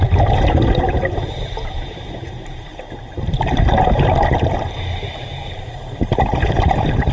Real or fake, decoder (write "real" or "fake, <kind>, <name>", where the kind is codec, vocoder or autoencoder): fake, vocoder, BigVGAN v2